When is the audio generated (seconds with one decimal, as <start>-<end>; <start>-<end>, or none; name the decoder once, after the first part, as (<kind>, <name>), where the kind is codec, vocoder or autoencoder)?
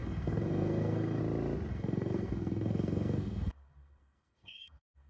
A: 0.0-1.2 (codec, SNAC); 1.7-5.1